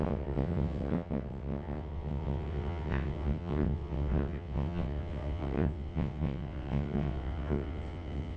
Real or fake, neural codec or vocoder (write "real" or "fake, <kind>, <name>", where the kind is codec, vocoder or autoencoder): fake, vocoder, WaveNeXt